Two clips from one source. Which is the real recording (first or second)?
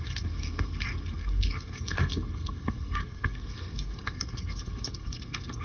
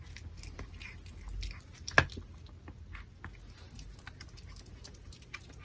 second